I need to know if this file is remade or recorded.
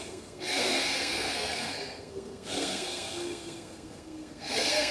remade